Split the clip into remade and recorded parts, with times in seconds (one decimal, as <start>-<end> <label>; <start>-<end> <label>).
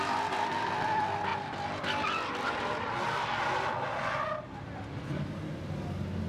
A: 0.0-6.3 recorded